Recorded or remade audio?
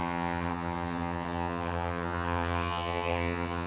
remade